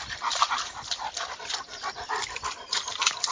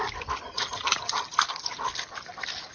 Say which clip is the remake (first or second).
first